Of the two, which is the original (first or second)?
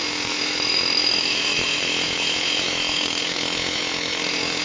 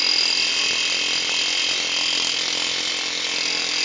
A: second